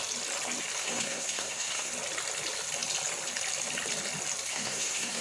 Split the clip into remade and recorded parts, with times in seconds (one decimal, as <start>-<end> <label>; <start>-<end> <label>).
0.0-0.8 recorded; 0.8-1.9 remade; 1.9-4.5 recorded; 4.5-5.2 remade